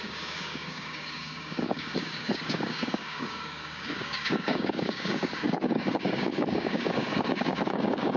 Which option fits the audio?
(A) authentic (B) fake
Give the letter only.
B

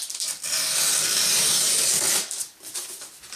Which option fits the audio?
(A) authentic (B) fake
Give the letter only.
A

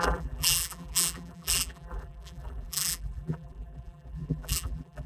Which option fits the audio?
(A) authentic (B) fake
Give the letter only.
B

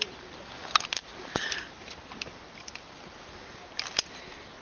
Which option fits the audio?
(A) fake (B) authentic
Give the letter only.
B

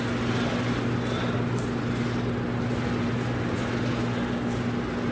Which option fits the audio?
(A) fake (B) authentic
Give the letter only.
B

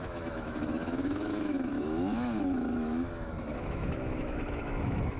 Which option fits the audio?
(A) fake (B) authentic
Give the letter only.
A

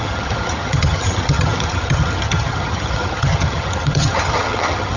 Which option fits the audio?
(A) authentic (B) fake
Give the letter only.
B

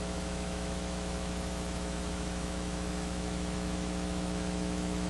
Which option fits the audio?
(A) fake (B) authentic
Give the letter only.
A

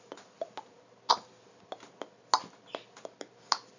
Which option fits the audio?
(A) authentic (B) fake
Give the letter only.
A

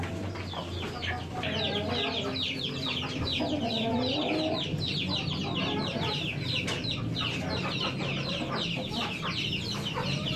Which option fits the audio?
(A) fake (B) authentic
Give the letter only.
B